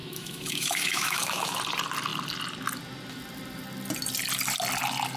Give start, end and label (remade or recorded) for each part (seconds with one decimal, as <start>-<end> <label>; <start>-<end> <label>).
0.0-1.6 remade; 1.6-5.2 recorded